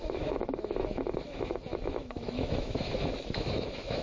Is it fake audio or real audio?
fake